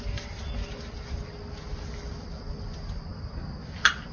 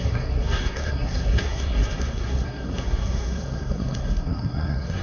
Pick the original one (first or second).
first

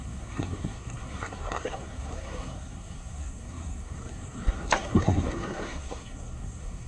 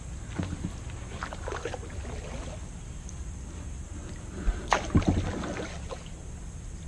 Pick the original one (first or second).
second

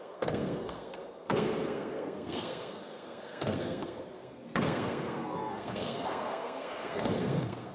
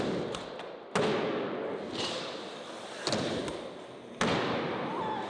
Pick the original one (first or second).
second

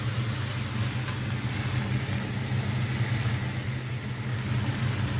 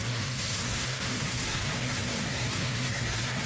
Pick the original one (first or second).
first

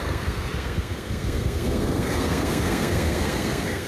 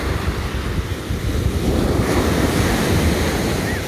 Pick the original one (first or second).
second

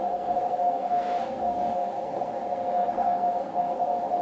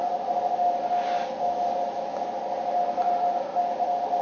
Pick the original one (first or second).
second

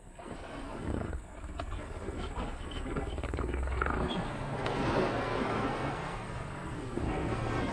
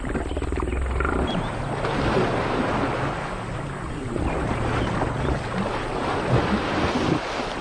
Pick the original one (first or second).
second